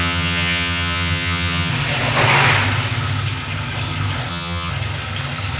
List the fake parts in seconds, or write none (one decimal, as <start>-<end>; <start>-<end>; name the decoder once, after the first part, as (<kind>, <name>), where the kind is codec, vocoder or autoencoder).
0.0-1.7 (vocoder, HiFi-GAN); 4.3-4.7